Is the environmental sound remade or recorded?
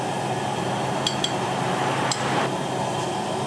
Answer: recorded